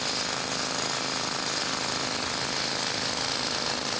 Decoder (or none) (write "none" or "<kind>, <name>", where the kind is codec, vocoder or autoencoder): none